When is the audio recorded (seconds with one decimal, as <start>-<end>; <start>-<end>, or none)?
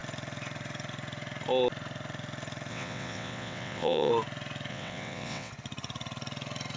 0.0-2.7; 4.1-4.7; 5.5-6.8